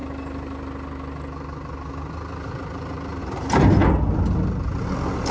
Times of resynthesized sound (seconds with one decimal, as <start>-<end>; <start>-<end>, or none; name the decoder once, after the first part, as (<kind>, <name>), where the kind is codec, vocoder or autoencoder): none